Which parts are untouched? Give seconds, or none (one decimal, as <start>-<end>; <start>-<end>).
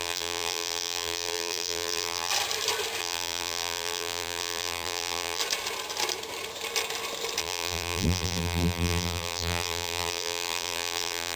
2.3-3.0; 5.4-7.4